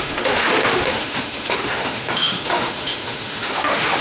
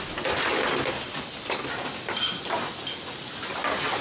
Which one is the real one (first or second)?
second